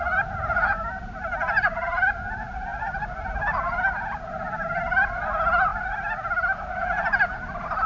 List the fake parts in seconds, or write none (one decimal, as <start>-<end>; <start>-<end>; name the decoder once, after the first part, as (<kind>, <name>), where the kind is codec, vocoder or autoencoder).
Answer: none